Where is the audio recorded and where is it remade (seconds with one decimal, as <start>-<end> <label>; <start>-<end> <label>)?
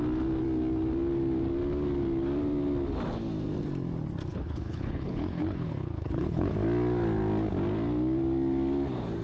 0.0-4.3 recorded; 4.3-6.5 remade; 6.5-9.2 recorded